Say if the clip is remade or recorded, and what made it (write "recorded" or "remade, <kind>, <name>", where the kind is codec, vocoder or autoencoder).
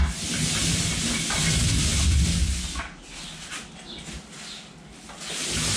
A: recorded